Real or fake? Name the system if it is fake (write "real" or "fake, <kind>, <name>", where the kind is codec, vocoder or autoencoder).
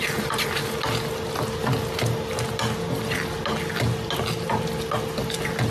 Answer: real